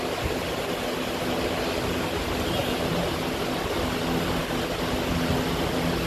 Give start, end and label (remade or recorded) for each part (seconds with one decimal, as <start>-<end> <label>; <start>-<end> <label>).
0.0-2.6 recorded; 2.6-3.3 remade; 3.3-6.1 recorded